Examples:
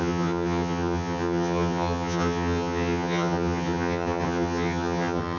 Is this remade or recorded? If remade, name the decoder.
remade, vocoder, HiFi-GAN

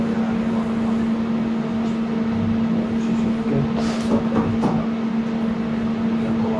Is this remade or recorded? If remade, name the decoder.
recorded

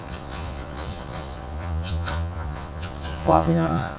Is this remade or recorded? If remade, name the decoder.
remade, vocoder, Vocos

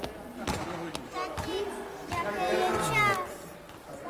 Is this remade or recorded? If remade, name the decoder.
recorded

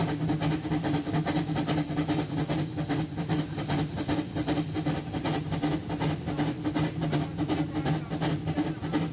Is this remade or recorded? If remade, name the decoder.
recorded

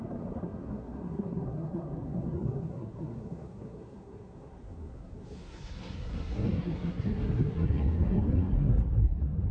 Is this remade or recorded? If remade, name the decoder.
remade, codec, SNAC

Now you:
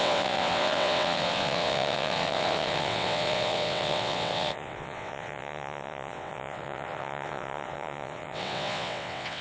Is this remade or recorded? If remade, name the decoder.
remade, vocoder, WaveNeXt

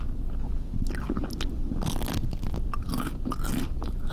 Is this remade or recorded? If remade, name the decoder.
recorded